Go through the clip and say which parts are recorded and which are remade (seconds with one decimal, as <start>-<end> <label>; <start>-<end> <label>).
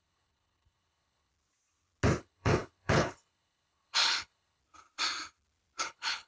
0.0-1.3 remade; 1.3-2.2 recorded; 2.2-4.6 remade; 4.6-5.8 recorded; 5.8-6.3 remade